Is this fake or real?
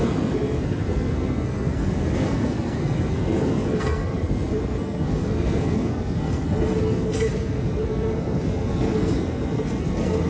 fake